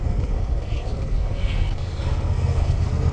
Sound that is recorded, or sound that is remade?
remade